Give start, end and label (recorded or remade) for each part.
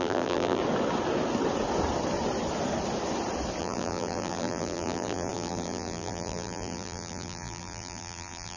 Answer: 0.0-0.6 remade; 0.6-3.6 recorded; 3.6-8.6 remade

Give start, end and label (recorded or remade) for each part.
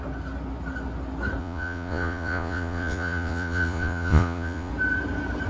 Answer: 0.0-1.4 recorded; 1.4-4.7 remade; 4.7-5.5 recorded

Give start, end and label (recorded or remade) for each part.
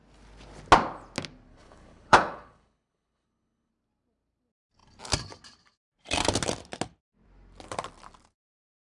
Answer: 0.0-1.5 recorded; 1.5-3.7 remade; 3.7-8.9 recorded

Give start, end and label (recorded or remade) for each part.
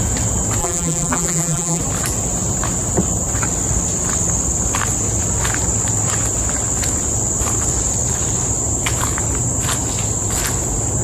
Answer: 0.0-0.6 recorded; 0.6-1.8 remade; 1.8-11.0 recorded